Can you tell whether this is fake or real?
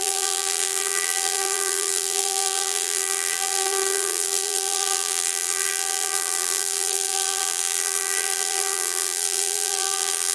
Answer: fake